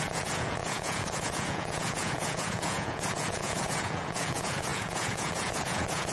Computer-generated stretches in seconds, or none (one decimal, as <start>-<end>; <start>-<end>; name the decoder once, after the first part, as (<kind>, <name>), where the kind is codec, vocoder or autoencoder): 0.0-6.1 (vocoder, Vocos)